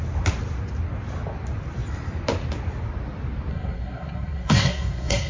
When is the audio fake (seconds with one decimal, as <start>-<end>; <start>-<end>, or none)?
3.5-5.3